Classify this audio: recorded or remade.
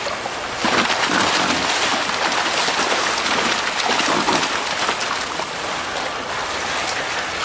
recorded